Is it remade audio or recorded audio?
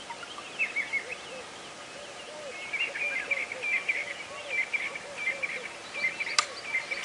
recorded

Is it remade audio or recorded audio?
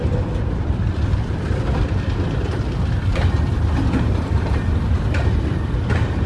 remade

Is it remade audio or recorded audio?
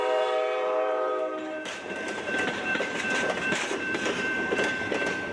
remade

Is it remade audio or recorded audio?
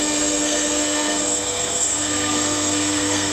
remade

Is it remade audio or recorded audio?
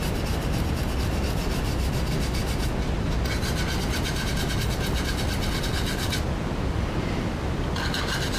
recorded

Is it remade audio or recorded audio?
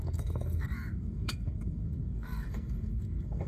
remade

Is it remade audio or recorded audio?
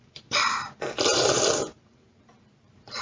remade